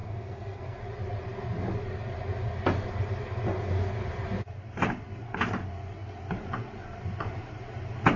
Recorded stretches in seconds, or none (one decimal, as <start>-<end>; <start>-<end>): 0.8-8.2